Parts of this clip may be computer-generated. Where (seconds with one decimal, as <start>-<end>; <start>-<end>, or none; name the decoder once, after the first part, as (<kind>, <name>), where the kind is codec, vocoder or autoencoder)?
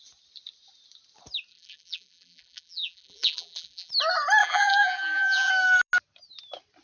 1.5-3.9 (vocoder, BigVGAN v2); 4.4-5.5